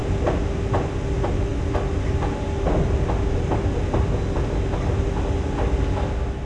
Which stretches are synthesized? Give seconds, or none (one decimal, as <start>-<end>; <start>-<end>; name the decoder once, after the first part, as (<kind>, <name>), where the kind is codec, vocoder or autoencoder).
none